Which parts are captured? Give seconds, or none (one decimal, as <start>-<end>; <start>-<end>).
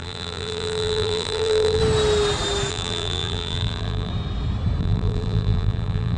1.8-2.7; 4.1-4.8